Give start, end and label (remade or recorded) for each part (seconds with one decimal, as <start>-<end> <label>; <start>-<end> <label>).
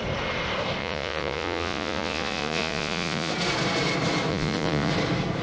0.0-0.8 recorded; 0.8-3.3 remade; 3.3-4.3 recorded; 4.3-4.9 remade; 4.9-5.4 recorded